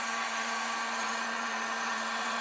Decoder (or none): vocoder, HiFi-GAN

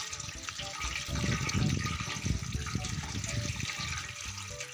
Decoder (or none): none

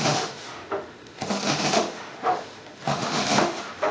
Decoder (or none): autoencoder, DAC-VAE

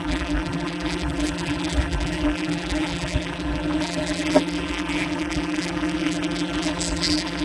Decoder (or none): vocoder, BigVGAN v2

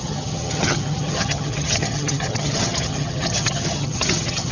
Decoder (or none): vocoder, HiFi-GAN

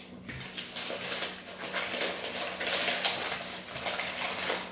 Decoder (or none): none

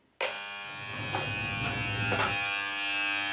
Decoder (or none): none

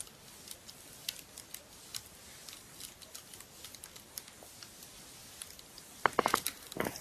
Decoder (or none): none